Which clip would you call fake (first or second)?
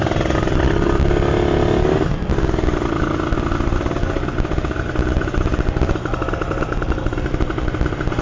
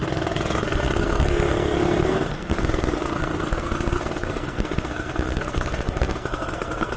second